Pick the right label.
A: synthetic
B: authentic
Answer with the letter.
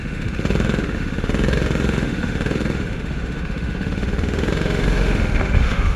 A